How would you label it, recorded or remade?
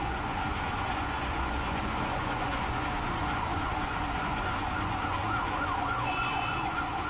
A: remade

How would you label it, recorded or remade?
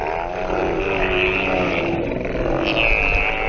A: recorded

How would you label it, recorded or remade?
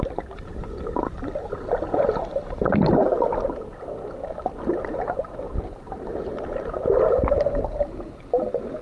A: recorded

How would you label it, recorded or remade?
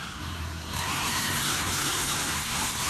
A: remade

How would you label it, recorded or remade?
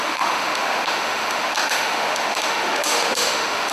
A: remade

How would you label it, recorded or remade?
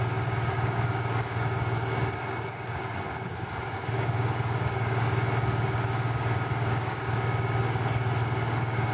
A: remade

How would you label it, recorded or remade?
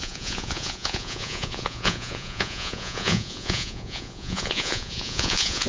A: remade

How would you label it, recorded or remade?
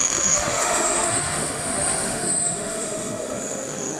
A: remade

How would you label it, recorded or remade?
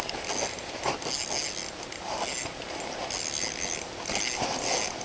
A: recorded